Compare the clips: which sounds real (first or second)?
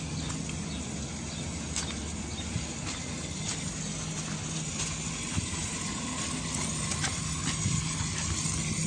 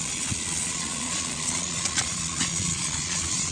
first